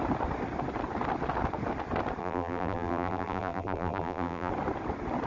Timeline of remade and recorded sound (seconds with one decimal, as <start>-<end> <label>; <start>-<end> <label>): 0.0-2.2 recorded; 2.2-4.5 remade; 4.5-5.3 recorded